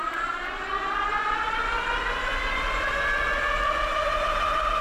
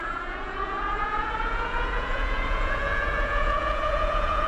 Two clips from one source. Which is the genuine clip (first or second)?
first